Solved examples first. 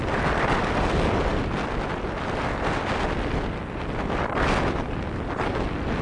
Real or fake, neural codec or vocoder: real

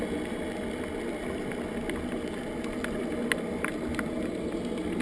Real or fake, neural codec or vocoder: real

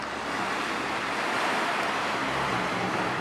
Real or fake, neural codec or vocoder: real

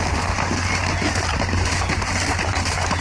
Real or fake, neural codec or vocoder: real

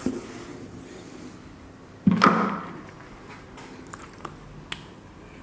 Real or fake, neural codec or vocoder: real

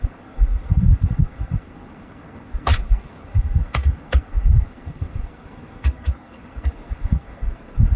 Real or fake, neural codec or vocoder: fake, codec, SNAC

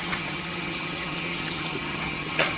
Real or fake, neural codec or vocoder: fake, vocoder, HiFi-GAN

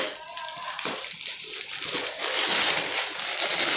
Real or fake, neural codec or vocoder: real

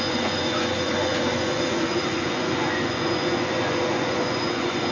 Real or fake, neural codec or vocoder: fake, vocoder, Vocos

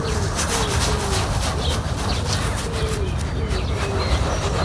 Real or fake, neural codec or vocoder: real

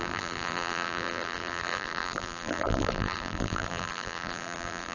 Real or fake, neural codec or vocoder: fake, vocoder, BigVGAN v2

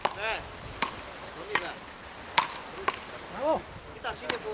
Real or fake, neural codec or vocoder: real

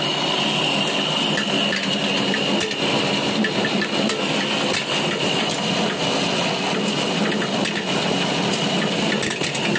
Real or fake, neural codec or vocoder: real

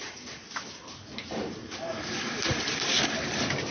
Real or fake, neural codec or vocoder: real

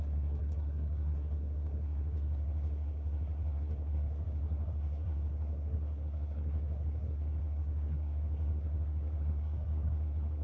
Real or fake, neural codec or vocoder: fake, codec, SNAC